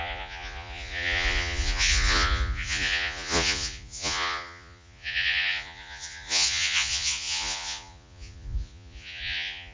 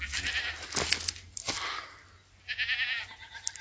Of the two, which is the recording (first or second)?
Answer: second